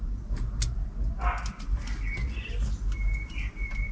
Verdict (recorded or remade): recorded